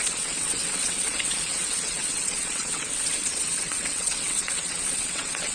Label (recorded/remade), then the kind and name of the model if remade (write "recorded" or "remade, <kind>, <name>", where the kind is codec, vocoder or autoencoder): remade, vocoder, WaveNeXt